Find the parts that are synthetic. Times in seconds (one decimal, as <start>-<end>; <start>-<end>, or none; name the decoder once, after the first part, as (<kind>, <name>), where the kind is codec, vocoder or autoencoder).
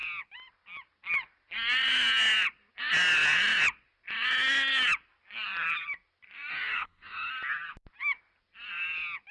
6.5-7.3 (codec, DAC)